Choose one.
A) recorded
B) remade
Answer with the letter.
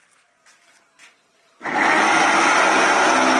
A